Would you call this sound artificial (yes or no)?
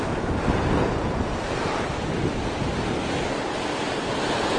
no